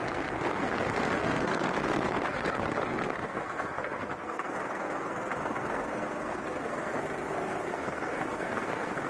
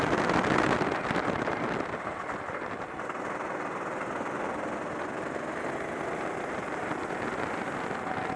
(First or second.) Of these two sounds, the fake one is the first